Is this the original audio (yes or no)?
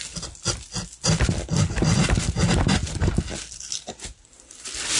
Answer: yes